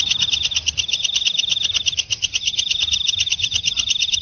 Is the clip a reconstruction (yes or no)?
no